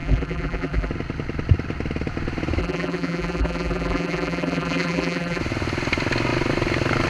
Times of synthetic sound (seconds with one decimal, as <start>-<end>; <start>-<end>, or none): 0.0-0.9; 2.6-5.4